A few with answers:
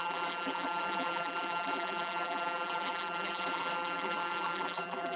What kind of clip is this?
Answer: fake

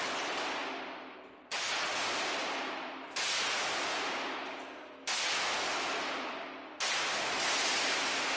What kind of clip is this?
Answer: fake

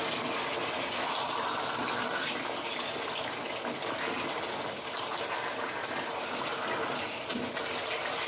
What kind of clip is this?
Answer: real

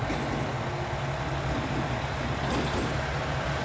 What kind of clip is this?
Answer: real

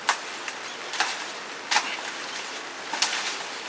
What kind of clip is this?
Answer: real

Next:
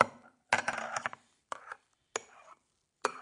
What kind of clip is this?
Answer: real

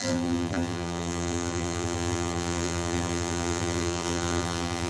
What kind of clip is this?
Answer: fake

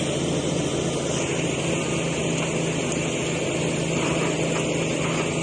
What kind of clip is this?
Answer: real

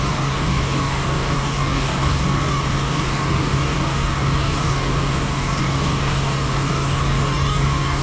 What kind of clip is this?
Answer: fake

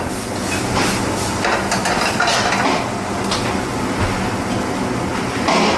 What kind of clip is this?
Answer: real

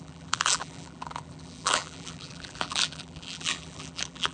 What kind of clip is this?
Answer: fake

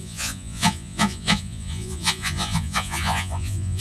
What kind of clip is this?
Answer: fake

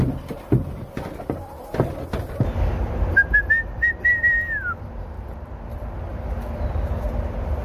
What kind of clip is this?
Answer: real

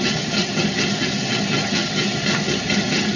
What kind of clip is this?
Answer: fake